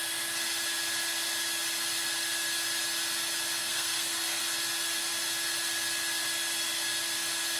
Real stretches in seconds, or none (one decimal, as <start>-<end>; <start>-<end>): 0.0-3.6; 4.4-7.6